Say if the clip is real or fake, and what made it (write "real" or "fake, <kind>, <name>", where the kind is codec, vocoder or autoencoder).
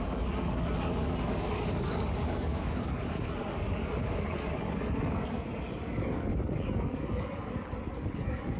fake, codec, DAC